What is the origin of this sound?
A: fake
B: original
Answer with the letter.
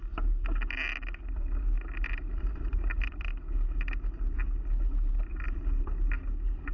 B